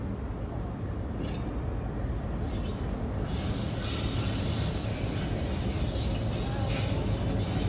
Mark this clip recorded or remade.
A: recorded